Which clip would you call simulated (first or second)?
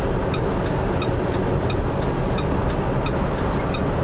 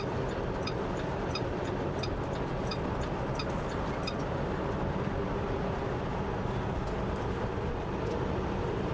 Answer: second